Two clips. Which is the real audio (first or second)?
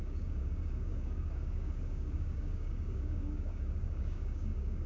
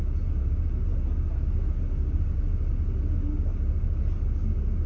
second